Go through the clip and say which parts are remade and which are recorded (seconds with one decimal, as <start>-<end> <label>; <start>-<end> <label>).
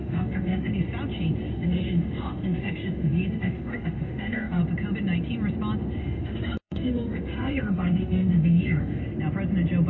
0.0-0.7 remade; 0.7-1.5 recorded; 1.5-4.6 remade; 4.6-6.0 recorded; 6.0-9.0 remade; 9.0-9.9 recorded